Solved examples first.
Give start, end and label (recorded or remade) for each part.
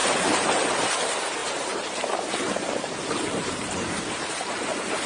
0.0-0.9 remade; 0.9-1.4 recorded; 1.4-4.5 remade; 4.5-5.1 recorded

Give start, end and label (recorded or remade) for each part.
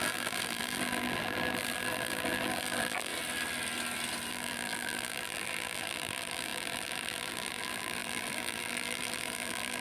0.0-3.1 remade; 3.1-4.3 recorded; 4.3-9.8 remade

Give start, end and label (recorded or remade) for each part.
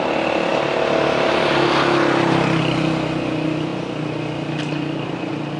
0.0-5.6 recorded